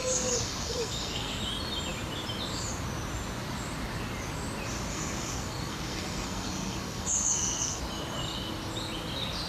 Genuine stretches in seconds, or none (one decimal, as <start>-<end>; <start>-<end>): 1.4-4.9; 7.8-9.5